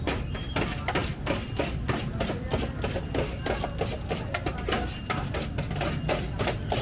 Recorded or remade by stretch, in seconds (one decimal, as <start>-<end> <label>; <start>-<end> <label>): 0.0-6.8 recorded